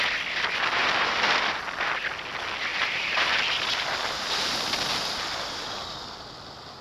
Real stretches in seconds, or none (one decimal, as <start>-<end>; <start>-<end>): 0.0-0.8; 1.6-2.7; 3.6-6.8